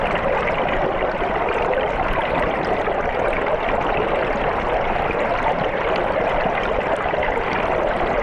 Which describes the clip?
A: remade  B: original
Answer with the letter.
B